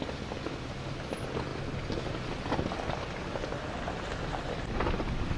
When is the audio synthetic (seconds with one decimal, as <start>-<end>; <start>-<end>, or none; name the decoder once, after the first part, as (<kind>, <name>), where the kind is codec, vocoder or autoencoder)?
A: none